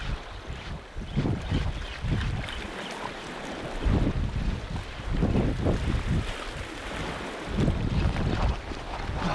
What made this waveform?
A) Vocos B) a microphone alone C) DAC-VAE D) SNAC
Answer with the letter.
B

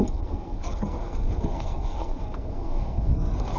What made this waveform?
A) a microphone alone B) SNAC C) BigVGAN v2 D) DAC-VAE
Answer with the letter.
B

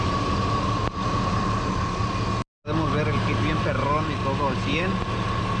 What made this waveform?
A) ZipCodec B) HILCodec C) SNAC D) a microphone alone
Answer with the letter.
D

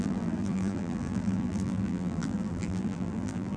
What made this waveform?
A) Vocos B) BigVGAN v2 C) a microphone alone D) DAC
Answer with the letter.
B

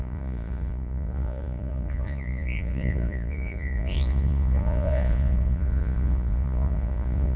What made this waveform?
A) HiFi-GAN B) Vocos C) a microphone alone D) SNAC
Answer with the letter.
B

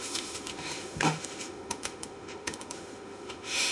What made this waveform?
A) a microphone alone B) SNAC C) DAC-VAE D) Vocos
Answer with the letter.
C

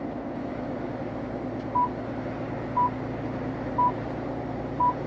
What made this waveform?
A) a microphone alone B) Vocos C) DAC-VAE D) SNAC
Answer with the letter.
A